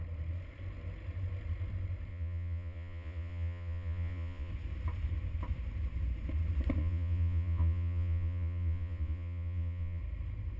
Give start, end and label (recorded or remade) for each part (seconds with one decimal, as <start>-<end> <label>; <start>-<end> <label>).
0.0-2.1 recorded; 2.1-4.5 remade; 4.5-6.8 recorded; 6.8-10.0 remade; 10.0-10.6 recorded